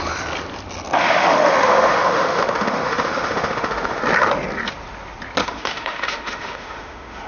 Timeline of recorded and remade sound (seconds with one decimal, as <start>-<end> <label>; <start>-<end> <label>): 0.0-1.0 recorded; 1.0-4.0 remade; 4.0-5.4 recorded; 5.4-7.3 remade